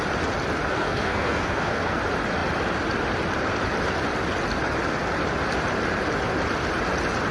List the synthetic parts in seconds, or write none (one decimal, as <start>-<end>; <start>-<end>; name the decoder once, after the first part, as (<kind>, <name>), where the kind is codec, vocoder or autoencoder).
0.7-2.0 (codec, SNAC)